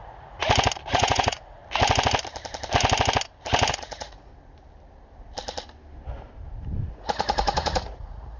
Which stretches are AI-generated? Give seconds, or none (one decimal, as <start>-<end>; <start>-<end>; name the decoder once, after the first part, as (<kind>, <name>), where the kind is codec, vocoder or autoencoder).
0.0-0.4 (vocoder, Vocos); 0.9-1.6; 3.7-4.3; 6.9-8.4